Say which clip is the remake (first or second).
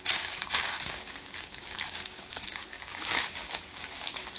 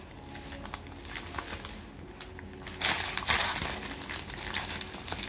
first